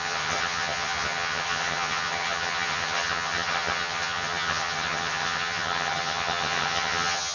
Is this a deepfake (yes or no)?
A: yes